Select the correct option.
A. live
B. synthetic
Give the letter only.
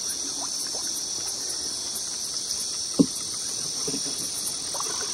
A